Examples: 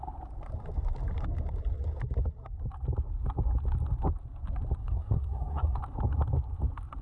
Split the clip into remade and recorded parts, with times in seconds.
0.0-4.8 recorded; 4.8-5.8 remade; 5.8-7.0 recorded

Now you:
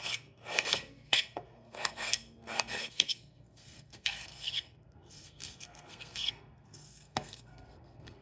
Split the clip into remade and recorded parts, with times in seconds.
0.0-8.2 remade

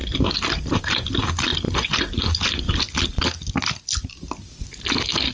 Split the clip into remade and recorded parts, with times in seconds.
0.0-5.3 recorded

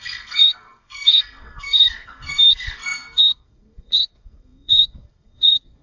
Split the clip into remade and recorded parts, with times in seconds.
0.0-5.8 remade